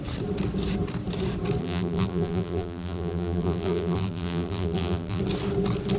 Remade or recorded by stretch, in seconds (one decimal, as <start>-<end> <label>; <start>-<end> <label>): 0.0-1.6 recorded; 1.6-5.2 remade; 5.2-6.0 recorded